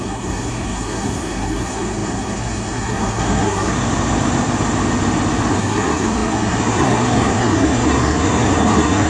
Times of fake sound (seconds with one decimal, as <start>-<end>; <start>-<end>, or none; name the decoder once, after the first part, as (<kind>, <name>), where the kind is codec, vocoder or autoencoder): 0.0-3.7 (codec, SNAC); 5.5-9.1